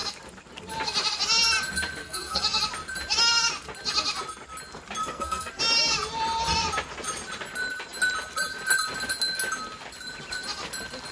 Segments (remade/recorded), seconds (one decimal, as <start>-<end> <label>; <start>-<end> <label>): 0.0-2.0 recorded; 2.0-2.6 remade; 2.6-5.0 recorded; 5.0-5.6 remade; 5.6-11.1 recorded